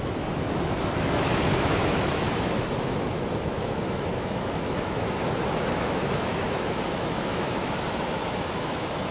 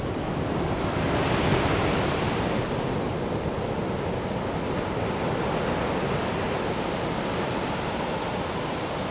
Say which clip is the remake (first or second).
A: first